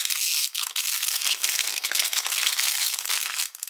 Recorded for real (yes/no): no